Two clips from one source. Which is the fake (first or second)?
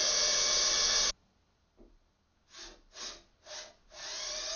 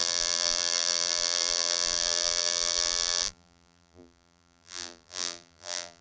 second